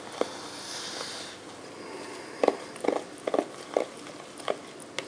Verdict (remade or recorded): recorded